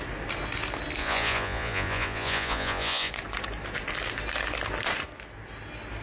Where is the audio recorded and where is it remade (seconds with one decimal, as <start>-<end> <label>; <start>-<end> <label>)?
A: 0.0-1.0 recorded; 1.0-3.1 remade; 3.1-6.0 recorded